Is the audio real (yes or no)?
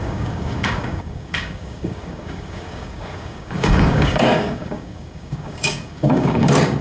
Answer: no